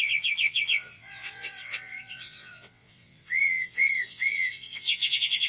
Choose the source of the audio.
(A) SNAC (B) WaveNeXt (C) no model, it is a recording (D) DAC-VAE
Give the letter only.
B